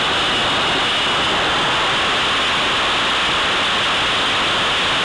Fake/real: real